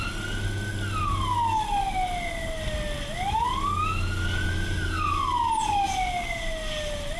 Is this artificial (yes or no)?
no